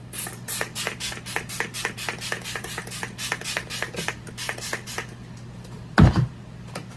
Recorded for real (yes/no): yes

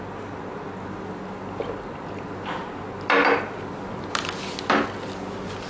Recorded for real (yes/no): yes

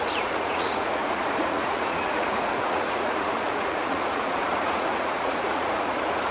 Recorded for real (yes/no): no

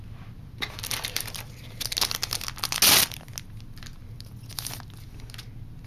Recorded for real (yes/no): yes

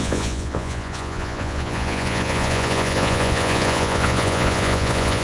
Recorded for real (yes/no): no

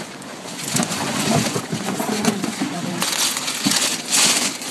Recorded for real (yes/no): no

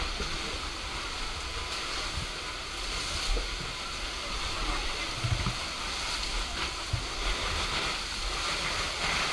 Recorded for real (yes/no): yes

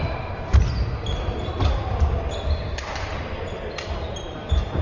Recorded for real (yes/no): yes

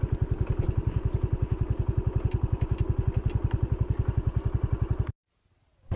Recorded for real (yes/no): yes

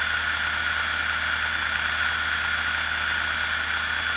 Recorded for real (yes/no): yes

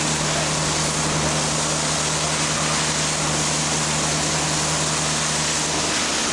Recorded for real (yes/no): yes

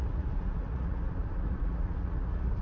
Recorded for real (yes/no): no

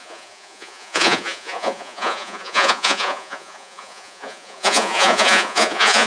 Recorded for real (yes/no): no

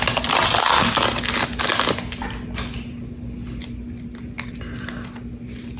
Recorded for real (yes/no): yes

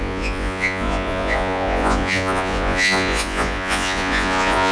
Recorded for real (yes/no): no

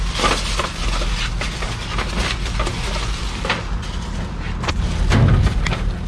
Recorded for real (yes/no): yes